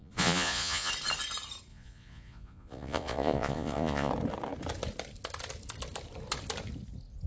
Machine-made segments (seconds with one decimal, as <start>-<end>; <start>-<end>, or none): 0.0-0.9; 1.7-4.1